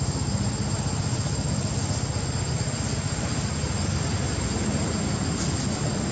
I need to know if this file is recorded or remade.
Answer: recorded